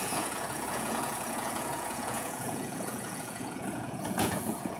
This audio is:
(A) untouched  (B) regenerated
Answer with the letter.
B